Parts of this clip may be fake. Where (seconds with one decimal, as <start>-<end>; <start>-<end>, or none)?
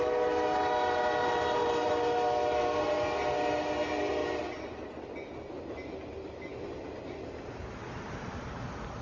1.2-1.9